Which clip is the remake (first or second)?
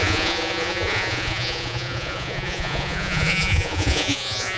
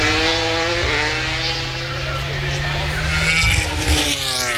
first